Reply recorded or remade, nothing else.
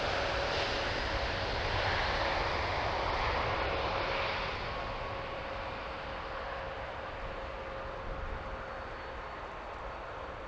recorded